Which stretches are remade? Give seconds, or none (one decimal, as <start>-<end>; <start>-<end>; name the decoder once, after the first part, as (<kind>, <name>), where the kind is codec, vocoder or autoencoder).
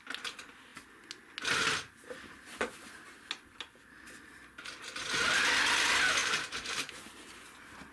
6.2-7.0 (vocoder, BigVGAN v2)